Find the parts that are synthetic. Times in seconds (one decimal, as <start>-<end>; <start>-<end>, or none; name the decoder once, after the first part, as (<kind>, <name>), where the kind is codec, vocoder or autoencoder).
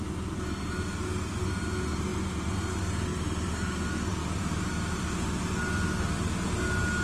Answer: 3.1-3.8 (vocoder, BigVGAN v2)